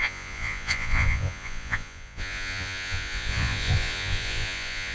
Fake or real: fake